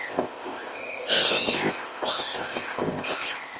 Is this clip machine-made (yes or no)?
yes